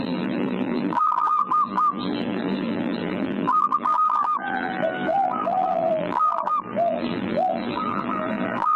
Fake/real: fake